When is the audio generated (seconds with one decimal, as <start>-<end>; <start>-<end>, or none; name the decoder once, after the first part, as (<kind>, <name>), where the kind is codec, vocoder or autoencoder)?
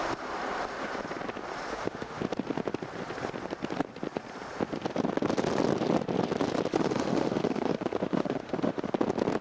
1.7-2.2 (autoencoder, DAC-VAE); 6.7-8.9